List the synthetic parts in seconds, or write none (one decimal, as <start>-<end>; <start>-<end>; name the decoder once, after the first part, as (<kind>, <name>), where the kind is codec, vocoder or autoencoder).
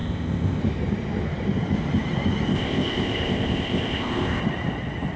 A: 0.0-0.6 (codec, ZipCodec); 2.5-4.4